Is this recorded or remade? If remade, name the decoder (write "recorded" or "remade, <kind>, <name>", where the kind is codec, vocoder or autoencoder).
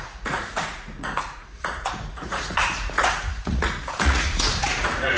remade, vocoder, Vocos